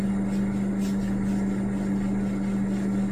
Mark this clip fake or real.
real